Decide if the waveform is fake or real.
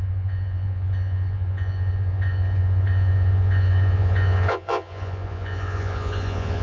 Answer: fake